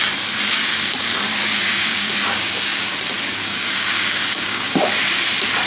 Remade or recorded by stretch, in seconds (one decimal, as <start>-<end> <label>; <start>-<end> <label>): 0.0-0.5 recorded; 0.5-2.9 remade; 2.9-3.4 recorded; 3.4-4.8 remade; 4.8-5.7 recorded